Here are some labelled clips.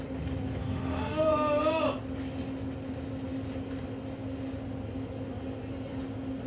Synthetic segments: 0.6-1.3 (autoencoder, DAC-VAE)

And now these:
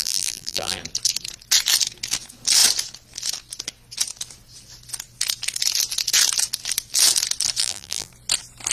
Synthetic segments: 0.0-0.8 (vocoder, BigVGAN v2); 7.6-8.1

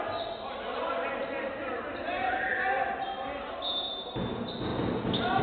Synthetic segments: none

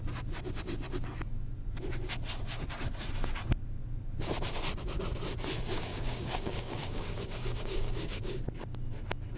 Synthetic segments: 5.7-8.4 (codec, DAC)

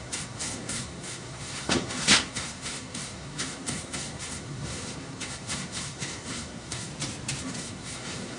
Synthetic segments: 0.0-6.9 (codec, SNAC); 7.4-8.4

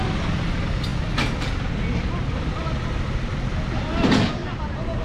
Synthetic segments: none